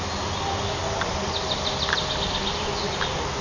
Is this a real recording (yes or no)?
yes